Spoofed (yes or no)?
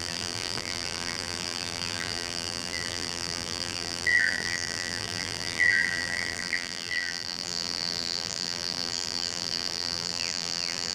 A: yes